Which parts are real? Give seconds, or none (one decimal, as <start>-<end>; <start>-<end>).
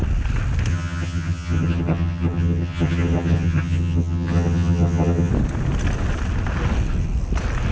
0.0-0.7; 5.3-7.7